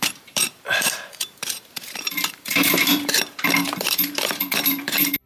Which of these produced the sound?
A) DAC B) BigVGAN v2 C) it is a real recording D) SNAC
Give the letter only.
B